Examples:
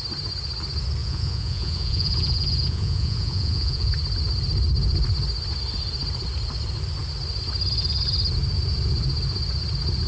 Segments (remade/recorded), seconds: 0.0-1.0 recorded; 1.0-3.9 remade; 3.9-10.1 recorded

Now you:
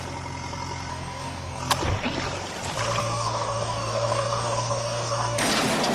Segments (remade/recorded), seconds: 0.0-0.9 recorded; 0.9-1.6 remade; 1.6-3.0 recorded; 3.0-5.5 remade; 5.5-5.9 recorded